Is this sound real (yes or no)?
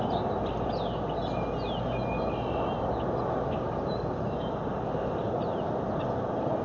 yes